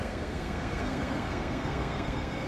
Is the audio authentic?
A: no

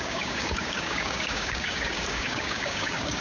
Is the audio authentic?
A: no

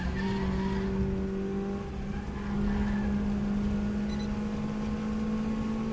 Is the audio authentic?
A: yes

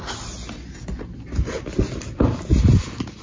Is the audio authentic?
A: yes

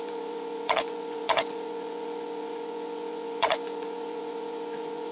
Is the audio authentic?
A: no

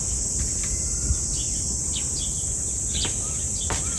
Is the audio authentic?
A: yes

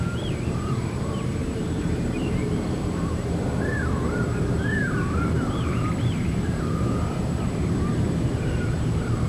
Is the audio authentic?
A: no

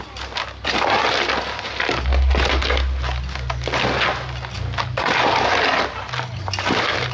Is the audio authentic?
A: yes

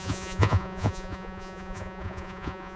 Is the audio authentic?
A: no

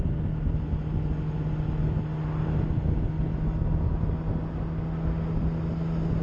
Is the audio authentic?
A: yes